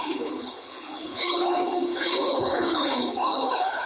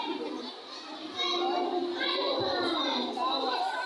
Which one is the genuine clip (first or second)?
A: second